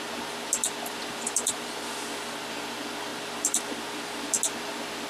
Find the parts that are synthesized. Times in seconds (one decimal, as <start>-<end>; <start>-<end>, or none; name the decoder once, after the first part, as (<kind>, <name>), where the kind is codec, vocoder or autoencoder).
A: 1.0-2.5 (vocoder, BigVGAN v2); 3.1-4.3